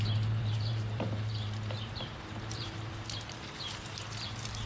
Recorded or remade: remade